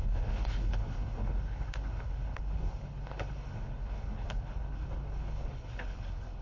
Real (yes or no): no